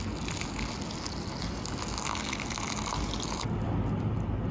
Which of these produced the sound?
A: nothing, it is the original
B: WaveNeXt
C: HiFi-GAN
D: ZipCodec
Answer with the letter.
A